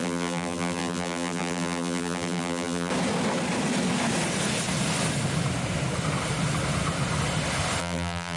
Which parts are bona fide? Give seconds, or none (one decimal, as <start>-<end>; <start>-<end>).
2.9-7.8